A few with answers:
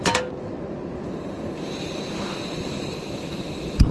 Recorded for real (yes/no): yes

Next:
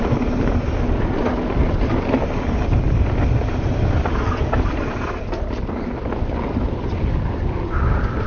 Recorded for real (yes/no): yes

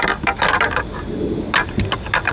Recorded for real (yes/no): yes